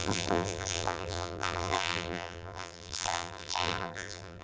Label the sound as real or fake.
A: fake